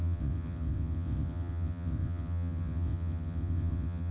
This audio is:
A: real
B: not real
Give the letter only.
B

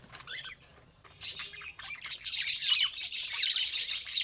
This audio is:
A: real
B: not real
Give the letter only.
B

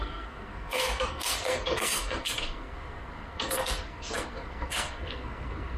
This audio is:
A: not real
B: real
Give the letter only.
A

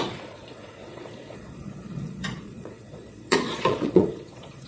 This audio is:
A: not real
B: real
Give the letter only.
A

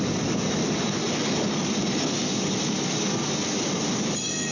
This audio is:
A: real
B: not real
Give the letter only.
A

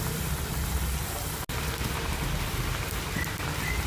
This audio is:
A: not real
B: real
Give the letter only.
B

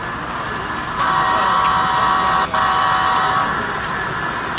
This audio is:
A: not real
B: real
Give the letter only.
B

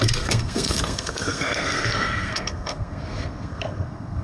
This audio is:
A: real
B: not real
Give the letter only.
B